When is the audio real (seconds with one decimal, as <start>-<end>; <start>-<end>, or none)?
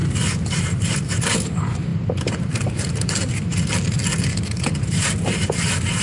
3.5-4.4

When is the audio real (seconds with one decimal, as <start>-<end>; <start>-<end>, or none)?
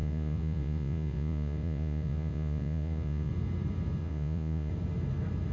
3.3-4.0; 4.7-5.5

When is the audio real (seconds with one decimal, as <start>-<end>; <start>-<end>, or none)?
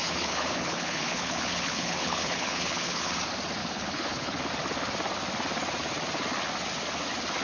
3.1-3.6; 4.5-7.4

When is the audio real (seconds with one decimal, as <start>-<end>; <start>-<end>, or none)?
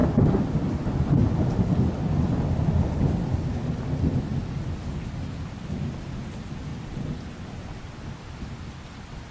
0.0-6.7; 7.4-9.3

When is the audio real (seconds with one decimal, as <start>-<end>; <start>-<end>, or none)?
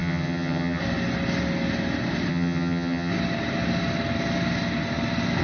0.8-2.3; 3.1-5.4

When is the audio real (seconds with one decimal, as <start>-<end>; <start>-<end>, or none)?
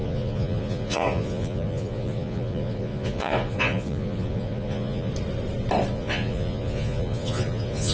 5.1-5.9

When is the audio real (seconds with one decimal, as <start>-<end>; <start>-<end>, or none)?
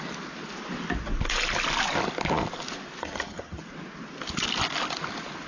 0.0-3.0; 3.6-5.5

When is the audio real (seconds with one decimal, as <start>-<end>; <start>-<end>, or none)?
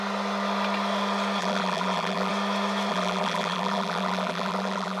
0.0-1.4; 2.3-2.9